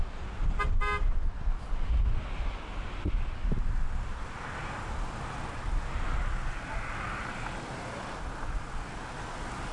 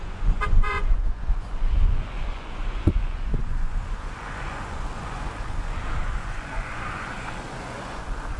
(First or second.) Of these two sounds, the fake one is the second